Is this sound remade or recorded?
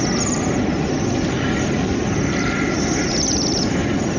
recorded